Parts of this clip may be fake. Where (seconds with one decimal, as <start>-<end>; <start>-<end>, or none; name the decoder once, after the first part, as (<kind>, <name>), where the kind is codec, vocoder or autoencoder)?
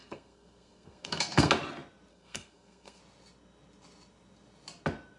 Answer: 0.0-1.5 (codec, SNAC); 2.1-3.0